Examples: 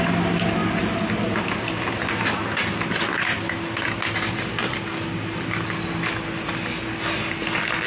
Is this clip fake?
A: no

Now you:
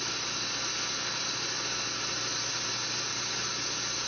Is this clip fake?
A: no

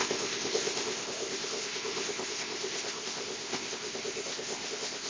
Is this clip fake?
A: yes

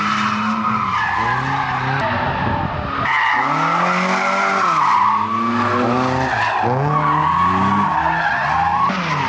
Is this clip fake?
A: no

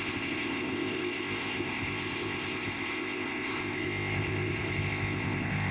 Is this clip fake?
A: yes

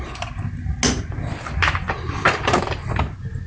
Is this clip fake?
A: no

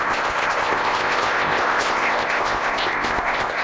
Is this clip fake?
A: yes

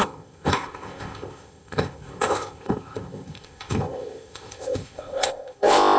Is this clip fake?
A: yes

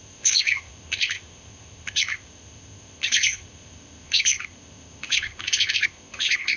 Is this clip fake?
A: yes